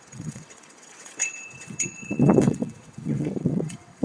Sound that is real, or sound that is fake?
fake